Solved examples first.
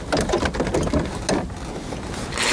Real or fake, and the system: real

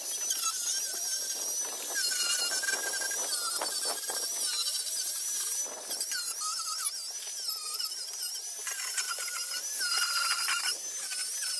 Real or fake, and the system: real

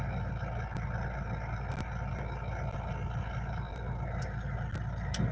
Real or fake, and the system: real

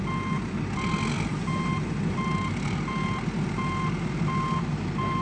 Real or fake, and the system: real